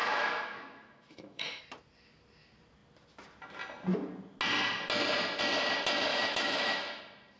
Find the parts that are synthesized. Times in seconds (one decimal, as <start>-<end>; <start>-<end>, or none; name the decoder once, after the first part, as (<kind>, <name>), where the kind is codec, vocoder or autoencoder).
0.0-1.6 (autoencoder, DAC-VAE); 6.1-7.0